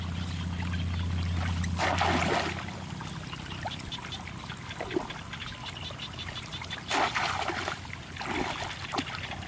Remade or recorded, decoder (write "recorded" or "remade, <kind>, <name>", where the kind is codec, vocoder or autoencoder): recorded